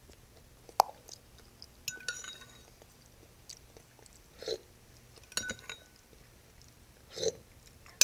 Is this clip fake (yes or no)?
no